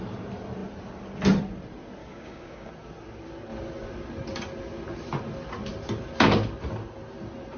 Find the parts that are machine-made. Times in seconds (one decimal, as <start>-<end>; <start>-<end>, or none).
2.0-2.7

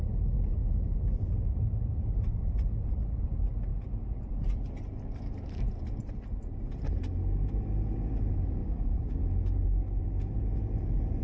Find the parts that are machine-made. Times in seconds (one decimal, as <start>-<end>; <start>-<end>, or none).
8.6-10.4

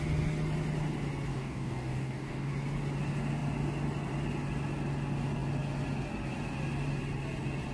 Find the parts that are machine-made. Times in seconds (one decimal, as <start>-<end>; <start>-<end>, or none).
1.3-2.5